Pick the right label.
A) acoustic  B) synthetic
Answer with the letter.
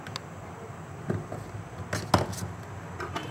A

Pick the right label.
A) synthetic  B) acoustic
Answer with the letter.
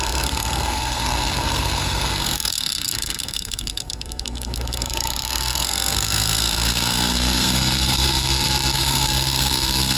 A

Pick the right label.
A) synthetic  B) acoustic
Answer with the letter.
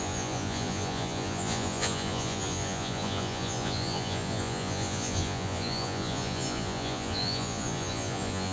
A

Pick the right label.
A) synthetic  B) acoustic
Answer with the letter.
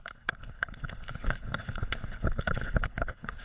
A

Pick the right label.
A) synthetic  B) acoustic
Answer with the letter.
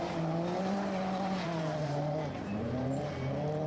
A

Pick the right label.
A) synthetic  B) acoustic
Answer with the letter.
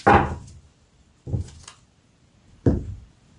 B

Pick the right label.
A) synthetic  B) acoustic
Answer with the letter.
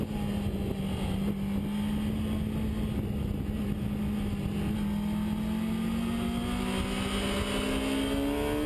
B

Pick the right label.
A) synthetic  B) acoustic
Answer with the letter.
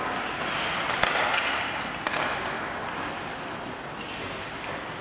B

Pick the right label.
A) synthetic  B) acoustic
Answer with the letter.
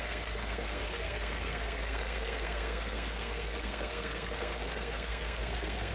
A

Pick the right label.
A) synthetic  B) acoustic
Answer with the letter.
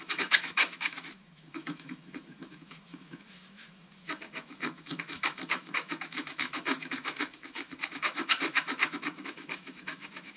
A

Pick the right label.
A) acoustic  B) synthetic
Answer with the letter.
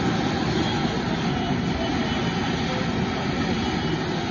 A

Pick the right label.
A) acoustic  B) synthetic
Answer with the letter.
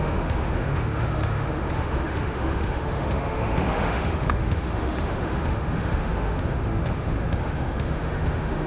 B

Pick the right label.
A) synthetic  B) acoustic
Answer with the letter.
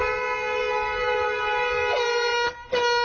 B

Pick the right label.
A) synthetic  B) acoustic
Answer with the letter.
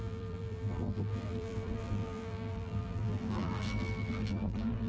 A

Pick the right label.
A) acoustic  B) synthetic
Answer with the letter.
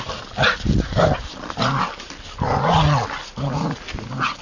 A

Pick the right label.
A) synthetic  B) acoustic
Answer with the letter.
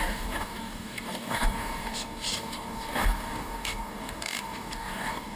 A